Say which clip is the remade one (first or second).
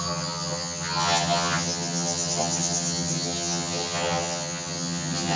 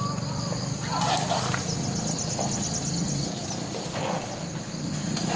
first